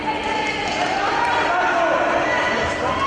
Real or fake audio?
real